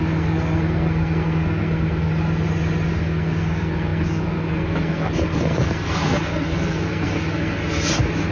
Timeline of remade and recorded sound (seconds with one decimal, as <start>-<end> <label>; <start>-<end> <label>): 0.0-2.1 remade; 2.1-2.9 recorded; 2.9-7.6 remade; 7.6-8.3 recorded